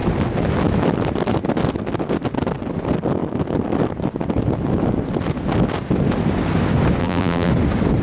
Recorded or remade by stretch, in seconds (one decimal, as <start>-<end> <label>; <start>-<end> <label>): 0.0-7.0 recorded; 7.0-7.5 remade; 7.5-8.0 recorded

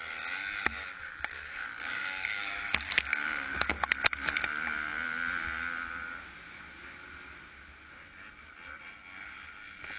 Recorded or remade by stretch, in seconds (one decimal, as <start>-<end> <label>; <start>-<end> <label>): 0.0-1.0 recorded; 1.0-3.7 remade; 3.7-10.0 recorded

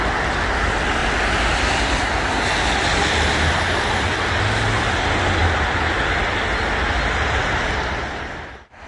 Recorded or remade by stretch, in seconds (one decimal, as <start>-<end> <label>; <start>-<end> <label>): 0.0-8.9 recorded

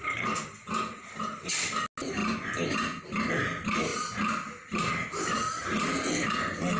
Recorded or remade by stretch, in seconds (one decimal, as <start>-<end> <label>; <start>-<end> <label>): 0.0-6.8 recorded